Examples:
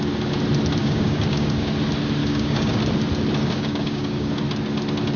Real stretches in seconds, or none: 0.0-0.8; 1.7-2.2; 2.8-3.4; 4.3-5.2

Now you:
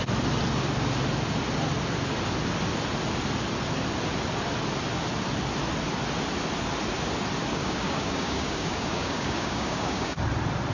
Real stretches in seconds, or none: 0.0-7.5; 10.2-10.7